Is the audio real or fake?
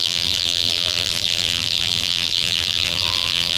fake